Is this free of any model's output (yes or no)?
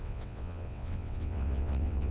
no